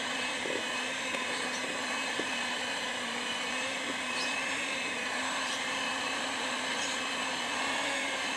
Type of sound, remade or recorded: remade